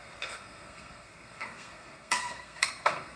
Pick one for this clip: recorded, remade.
remade